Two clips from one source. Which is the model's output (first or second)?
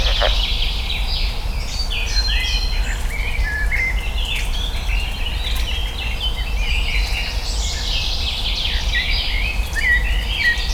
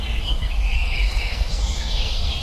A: second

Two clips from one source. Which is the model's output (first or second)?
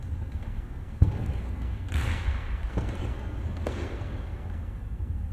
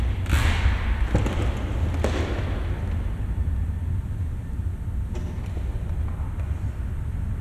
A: first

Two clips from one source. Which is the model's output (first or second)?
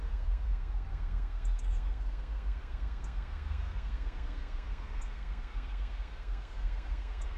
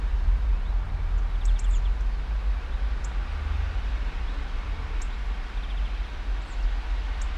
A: first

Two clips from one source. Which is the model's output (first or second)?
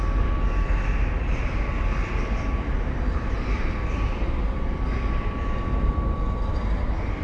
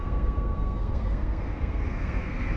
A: second